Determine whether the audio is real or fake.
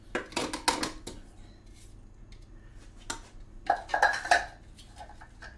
real